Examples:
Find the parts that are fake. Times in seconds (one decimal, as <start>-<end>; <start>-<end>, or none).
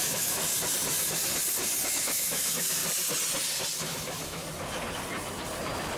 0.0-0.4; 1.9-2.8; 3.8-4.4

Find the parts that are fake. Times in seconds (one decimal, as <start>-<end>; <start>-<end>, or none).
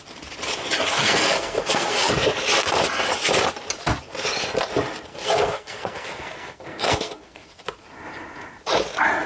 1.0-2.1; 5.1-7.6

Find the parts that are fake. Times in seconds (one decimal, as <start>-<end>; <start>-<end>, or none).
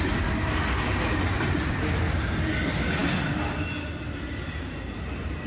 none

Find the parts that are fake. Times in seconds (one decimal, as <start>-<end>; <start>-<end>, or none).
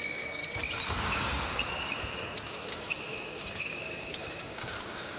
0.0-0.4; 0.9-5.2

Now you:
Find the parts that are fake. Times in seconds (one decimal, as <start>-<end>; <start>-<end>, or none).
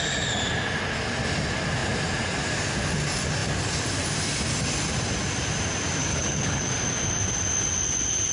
6.0-6.7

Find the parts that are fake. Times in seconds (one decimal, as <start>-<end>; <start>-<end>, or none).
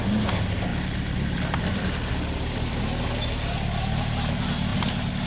0.7-2.8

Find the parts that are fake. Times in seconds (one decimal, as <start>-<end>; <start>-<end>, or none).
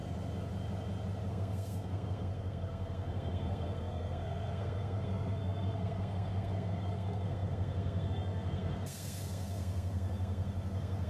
1.3-11.1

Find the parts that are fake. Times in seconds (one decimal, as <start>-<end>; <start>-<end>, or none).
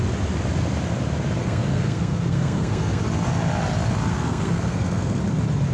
1.4-3.0; 4.1-5.2